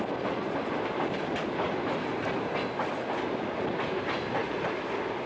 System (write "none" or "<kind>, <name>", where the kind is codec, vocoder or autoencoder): none